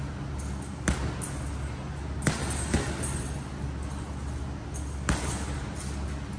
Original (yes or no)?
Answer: yes